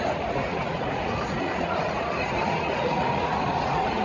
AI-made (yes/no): yes